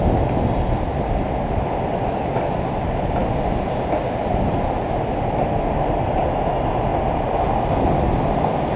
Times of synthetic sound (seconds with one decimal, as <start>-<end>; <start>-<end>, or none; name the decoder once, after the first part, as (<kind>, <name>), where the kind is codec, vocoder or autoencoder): 6.9-7.9 (vocoder, BigVGAN v2)